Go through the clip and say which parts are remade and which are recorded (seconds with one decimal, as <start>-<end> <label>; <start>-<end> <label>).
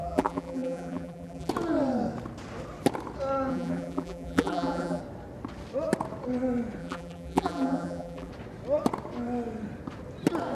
0.0-1.5 remade; 1.5-3.5 recorded; 3.5-5.0 remade; 5.0-6.8 recorded; 6.8-8.3 remade; 8.3-10.5 recorded